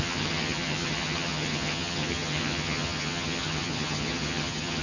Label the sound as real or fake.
fake